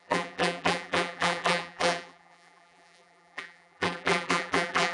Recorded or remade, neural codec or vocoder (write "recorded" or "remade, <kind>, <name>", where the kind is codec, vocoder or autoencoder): remade, vocoder, BigVGAN v2